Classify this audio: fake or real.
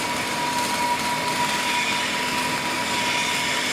real